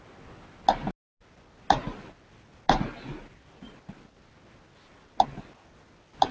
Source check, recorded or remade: recorded